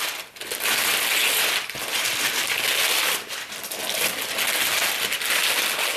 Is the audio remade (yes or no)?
no